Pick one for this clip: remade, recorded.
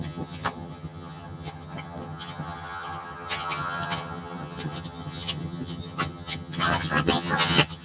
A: remade